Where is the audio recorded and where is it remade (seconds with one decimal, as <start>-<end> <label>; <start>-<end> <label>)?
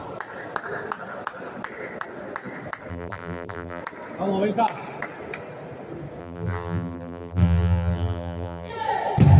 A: 0.0-2.9 recorded; 2.9-3.8 remade; 3.8-6.2 recorded; 6.2-8.7 remade; 8.7-9.4 recorded